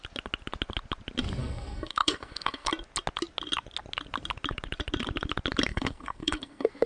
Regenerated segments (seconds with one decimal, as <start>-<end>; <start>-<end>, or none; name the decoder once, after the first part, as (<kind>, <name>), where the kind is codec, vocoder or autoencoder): 1.4-2.7 (codec, SNAC); 5.7-6.9